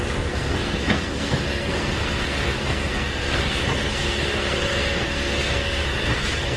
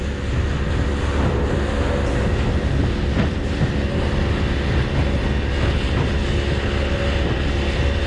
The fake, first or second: first